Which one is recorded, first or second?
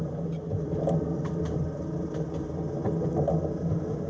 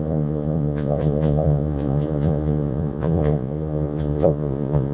first